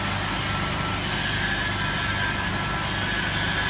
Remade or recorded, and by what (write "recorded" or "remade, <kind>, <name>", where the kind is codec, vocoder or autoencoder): recorded